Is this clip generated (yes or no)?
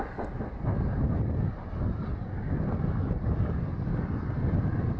no